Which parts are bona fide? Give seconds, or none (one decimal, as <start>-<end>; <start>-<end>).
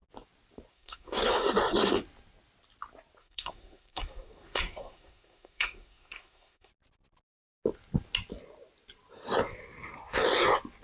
0.0-0.7; 1.3-3.2; 6.7-10.8